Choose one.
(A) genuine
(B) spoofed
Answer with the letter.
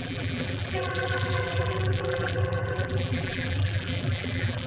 B